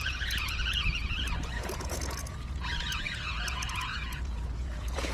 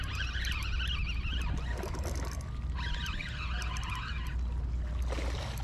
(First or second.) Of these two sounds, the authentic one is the second